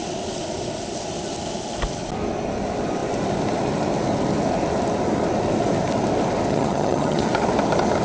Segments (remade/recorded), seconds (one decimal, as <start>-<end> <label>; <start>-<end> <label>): 0.0-6.5 recorded; 6.5-7.3 remade; 7.3-8.0 recorded